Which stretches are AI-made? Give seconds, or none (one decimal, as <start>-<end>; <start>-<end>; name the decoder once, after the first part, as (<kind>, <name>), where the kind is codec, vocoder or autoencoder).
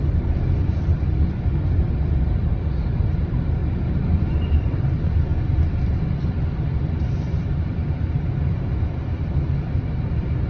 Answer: 0.0-10.5 (vocoder, BigVGAN v2)